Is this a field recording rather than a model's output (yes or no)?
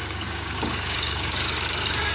no